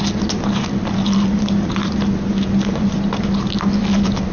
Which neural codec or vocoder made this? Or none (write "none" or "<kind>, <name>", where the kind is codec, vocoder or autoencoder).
none